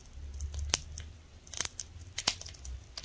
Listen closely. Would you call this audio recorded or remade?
recorded